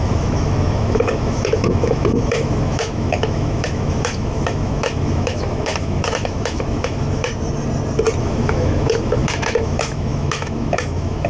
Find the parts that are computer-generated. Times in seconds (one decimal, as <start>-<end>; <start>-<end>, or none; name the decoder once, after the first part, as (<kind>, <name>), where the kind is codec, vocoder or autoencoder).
0.0-7.3 (autoencoder, DAC-VAE); 8.2-11.3